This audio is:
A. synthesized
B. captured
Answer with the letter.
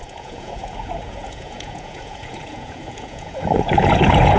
A